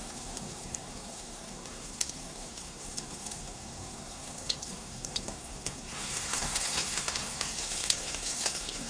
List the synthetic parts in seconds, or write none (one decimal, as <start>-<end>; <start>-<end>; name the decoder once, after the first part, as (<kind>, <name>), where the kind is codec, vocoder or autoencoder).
0.0-8.9 (codec, SNAC)